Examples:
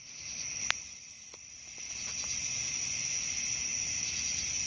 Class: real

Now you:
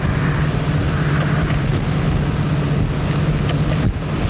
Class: real